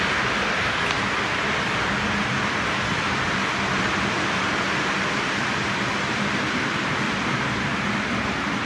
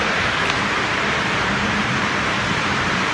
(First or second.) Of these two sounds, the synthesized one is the second